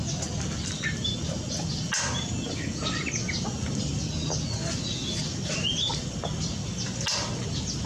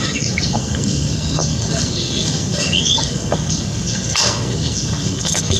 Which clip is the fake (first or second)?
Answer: second